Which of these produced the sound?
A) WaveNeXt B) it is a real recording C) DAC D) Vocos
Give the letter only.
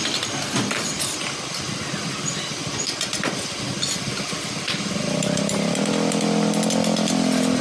B